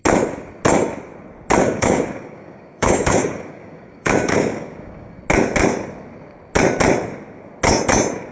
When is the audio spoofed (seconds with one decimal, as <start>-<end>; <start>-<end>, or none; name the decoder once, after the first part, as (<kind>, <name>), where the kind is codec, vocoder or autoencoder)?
1.6-5.2 (codec, DAC)